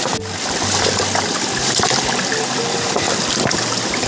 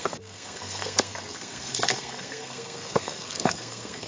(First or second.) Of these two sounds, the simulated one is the second